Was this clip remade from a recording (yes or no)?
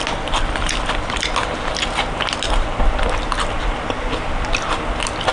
no